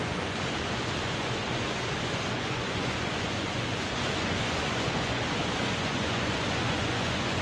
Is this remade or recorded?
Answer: remade